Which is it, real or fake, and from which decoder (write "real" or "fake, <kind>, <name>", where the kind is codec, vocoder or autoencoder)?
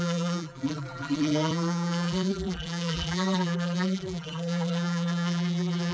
fake, vocoder, BigVGAN v2